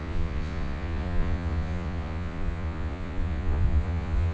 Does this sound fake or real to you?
fake